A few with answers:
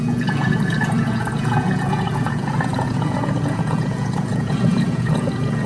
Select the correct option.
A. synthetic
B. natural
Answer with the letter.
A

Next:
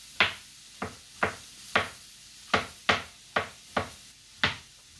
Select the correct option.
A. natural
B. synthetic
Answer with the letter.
A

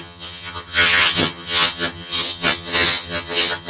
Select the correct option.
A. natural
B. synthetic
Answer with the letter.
B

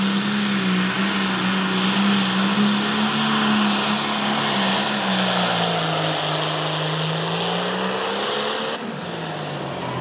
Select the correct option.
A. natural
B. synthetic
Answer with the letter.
A